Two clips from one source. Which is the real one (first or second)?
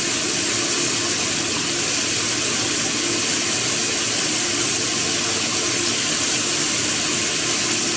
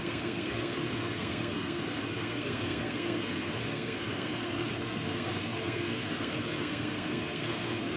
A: first